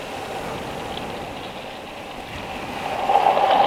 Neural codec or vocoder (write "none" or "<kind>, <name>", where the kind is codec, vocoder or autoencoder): none